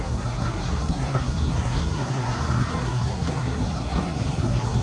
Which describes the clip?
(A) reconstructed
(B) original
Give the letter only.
A